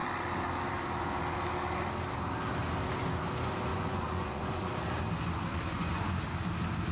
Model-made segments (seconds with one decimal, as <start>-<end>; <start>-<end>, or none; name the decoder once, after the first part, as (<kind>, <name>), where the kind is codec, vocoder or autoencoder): 3.7-4.7 (vocoder, Vocos); 5.5-6.1